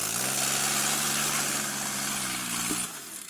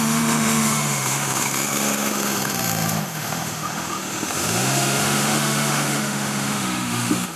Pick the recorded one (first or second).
first